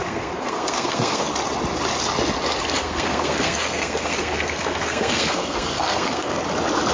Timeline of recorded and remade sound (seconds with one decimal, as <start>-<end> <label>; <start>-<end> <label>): 0.0-1.3 remade; 1.3-2.8 recorded; 2.8-6.4 remade; 6.4-6.9 recorded